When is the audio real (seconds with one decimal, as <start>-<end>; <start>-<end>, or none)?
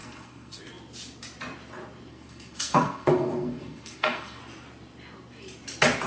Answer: 0.6-2.1; 4.4-6.1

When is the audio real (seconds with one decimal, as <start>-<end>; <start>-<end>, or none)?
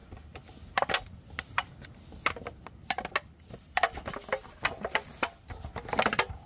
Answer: 0.0-6.5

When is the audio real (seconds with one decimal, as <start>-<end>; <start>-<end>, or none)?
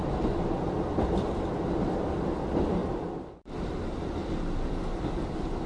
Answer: 0.0-5.7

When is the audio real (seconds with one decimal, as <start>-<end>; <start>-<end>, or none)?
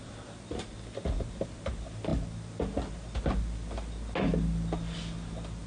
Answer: 0.0-5.7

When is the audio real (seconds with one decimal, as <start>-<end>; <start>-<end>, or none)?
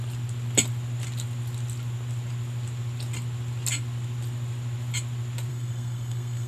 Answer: 0.0-5.5